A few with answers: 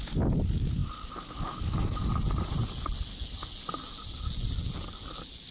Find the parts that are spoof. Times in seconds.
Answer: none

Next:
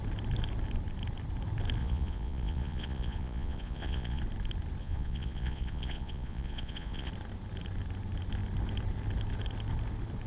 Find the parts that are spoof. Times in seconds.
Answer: 1.8-4.2; 4.8-7.1

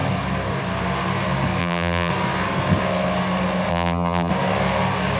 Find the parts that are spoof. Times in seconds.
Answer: 1.6-2.1; 3.7-4.3

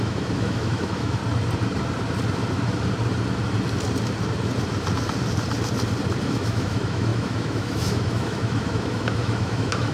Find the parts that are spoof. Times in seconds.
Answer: 0.0-1.2; 6.2-9.9

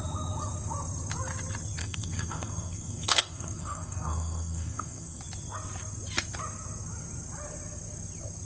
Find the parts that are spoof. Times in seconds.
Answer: 1.8-5.2

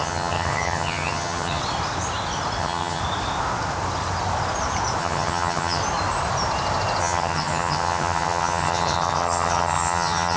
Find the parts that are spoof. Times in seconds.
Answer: 0.0-1.6; 2.6-3.0; 5.0-5.8; 7.0-10.4

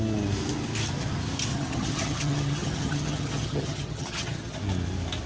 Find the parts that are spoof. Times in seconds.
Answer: 1.5-4.6

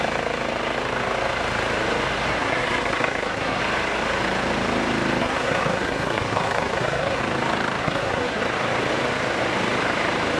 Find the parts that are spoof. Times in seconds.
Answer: 2.3-3.6; 5.2-7.2; 7.8-8.4